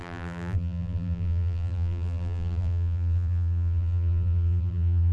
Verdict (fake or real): fake